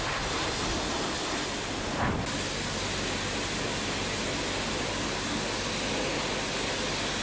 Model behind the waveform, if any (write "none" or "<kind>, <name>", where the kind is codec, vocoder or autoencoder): none